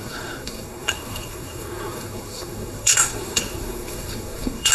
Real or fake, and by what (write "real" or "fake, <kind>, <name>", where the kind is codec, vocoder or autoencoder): fake, codec, SNAC